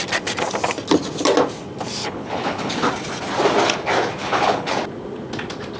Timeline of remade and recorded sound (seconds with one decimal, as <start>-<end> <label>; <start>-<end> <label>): 0.0-2.0 recorded; 2.0-2.9 remade; 2.9-4.2 recorded; 4.2-4.7 remade; 4.7-5.8 recorded